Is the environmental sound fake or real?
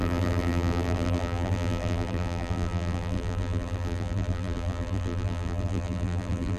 fake